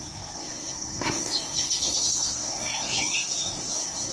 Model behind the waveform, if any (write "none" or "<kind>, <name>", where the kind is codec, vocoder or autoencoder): codec, SNAC